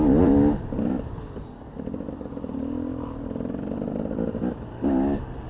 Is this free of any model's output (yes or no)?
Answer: yes